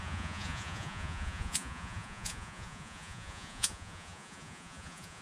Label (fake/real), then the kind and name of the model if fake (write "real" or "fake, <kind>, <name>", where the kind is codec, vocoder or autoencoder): fake, vocoder, Vocos